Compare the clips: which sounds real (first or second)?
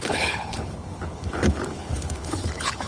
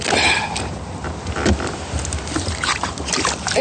second